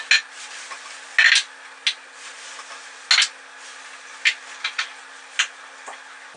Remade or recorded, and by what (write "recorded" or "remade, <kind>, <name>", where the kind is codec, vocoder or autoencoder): recorded